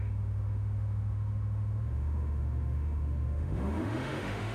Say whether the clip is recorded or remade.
remade